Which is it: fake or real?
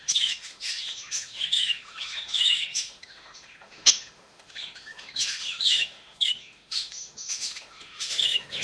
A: fake